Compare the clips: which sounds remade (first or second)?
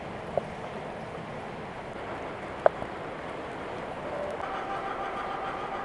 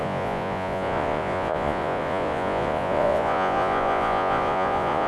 second